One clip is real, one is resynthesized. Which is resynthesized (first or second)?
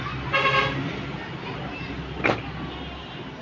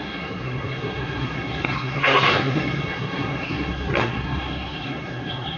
second